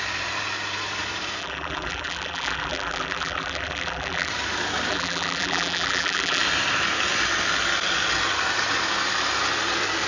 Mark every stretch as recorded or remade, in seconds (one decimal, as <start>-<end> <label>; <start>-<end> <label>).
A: 0.0-1.4 recorded; 1.4-4.3 remade; 4.3-4.9 recorded; 4.9-6.4 remade; 6.4-10.1 recorded